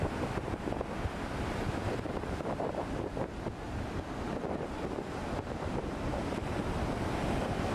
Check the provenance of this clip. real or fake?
real